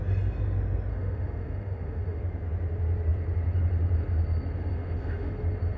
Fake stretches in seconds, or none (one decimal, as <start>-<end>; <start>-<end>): 0.9-2.2; 4.7-5.3